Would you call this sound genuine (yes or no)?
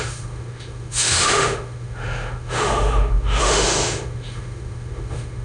no